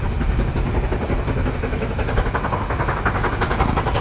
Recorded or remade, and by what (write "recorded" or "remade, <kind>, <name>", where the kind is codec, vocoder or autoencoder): recorded